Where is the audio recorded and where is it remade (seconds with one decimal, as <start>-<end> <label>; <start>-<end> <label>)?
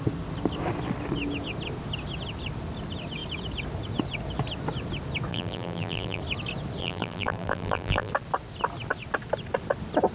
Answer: 0.0-5.3 recorded; 5.3-6.2 remade; 6.2-6.8 recorded; 6.8-8.1 remade; 8.1-10.1 recorded